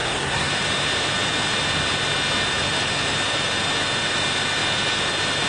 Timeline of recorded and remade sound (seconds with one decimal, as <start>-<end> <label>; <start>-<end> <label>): 0.0-0.5 remade; 0.5-5.5 recorded